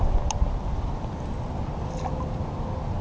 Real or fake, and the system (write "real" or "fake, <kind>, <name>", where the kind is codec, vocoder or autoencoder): real